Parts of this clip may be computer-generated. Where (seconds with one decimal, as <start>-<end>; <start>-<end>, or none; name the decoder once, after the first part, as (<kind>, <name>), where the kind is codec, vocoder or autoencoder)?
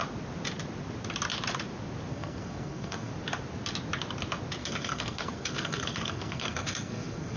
2.1-3.1 (codec, SNAC); 4.6-7.4